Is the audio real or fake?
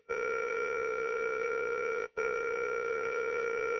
fake